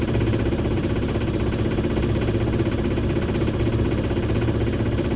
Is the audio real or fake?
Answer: fake